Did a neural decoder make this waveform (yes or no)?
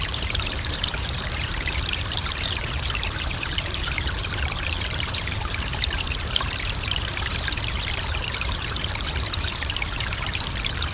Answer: yes